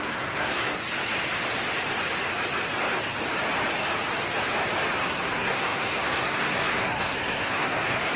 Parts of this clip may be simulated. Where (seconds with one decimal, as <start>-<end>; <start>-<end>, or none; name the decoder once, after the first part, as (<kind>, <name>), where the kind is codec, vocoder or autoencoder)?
0.0-0.8 (codec, SNAC); 5.0-8.2